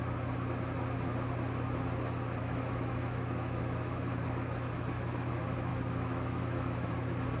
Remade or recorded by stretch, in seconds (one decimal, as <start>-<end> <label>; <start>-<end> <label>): 0.0-2.4 recorded; 2.4-5.3 remade; 5.3-5.7 recorded; 5.7-6.9 remade; 6.9-7.4 recorded